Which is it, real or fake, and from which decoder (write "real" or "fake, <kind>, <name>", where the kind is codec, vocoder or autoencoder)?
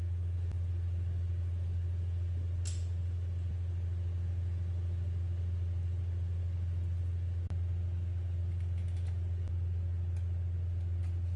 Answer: real